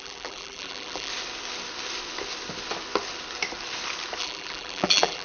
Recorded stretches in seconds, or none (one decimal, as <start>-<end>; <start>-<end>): 1.1-4.2